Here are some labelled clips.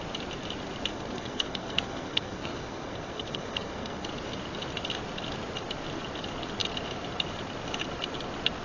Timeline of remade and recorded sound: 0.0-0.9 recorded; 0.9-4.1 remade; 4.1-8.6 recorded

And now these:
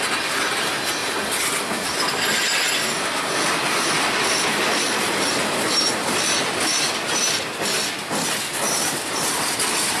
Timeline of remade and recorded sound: 0.0-10.0 recorded

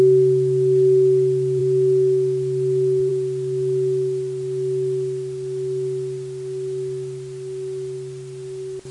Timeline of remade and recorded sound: 0.0-8.9 recorded

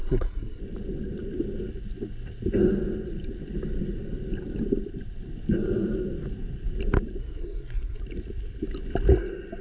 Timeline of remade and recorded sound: 0.0-0.6 remade; 0.6-7.2 recorded; 7.2-8.0 remade; 8.0-9.6 recorded

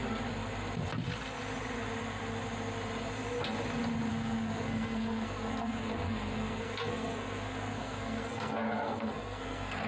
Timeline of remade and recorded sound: 0.0-4.1 recorded; 4.1-9.9 remade

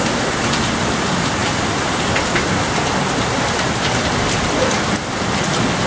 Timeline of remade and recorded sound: 0.0-5.9 recorded

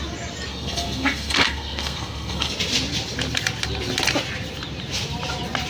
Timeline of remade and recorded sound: 0.0-0.5 recorded; 0.5-2.5 remade; 2.5-5.7 recorded